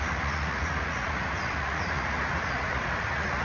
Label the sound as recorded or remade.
remade